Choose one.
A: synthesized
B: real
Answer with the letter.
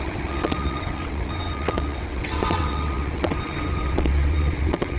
A